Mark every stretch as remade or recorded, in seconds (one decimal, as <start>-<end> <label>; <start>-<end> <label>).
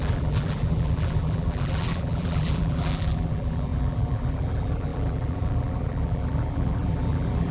0.0-7.5 remade